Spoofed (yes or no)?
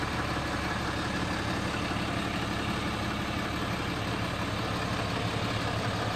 no